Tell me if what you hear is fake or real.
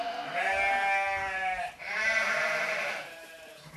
fake